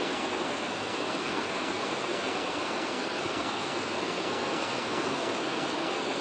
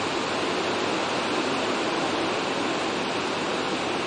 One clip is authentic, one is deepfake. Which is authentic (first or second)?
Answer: second